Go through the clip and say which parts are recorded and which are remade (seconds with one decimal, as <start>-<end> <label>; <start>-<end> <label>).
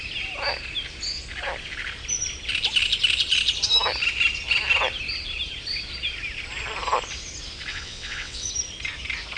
0.0-7.7 recorded; 7.7-8.5 remade; 8.5-9.4 recorded